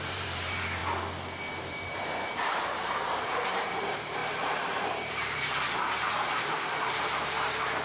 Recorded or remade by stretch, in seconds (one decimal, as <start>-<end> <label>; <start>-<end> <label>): 0.0-0.8 remade; 0.8-1.6 recorded; 1.6-7.8 remade